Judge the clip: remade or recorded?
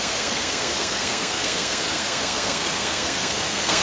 remade